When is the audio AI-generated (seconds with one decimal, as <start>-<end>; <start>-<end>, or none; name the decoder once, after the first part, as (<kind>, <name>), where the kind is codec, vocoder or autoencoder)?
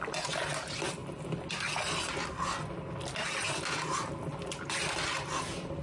none